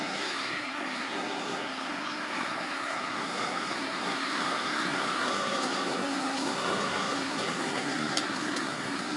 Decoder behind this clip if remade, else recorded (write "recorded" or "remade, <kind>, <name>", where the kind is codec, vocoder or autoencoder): remade, codec, SNAC